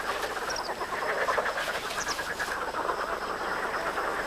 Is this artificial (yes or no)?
no